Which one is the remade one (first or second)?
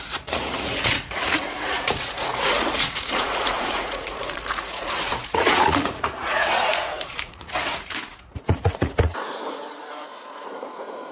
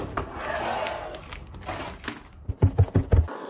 first